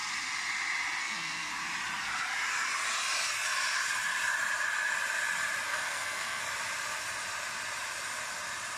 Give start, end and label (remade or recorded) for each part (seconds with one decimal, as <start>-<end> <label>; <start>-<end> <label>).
0.0-1.0 recorded; 1.0-1.5 remade; 1.5-5.7 recorded; 5.7-6.4 remade; 6.4-8.8 recorded